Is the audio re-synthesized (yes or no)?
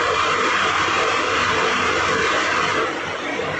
no